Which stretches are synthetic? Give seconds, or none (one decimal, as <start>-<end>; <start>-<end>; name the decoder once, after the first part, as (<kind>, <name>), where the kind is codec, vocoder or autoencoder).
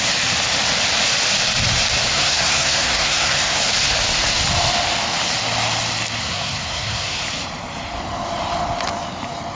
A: 2.1-3.6 (codec, SNAC); 6.2-7.2